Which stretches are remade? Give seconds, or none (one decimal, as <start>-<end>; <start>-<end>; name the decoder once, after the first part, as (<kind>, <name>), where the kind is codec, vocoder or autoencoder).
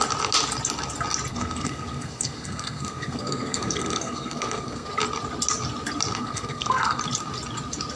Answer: 1.3-4.9 (codec, SNAC); 6.1-7.0